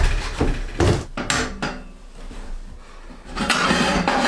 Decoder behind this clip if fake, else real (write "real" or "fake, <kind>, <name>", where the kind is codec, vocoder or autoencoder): real